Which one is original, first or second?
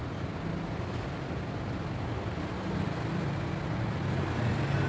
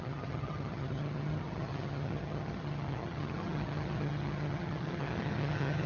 first